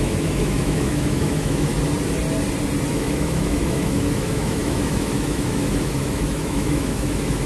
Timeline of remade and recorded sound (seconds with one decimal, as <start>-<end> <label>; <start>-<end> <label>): 0.0-1.7 remade; 1.7-2.9 recorded; 2.9-7.5 remade